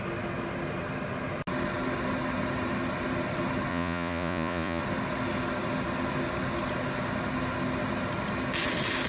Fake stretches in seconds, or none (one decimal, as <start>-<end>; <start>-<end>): 3.7-4.8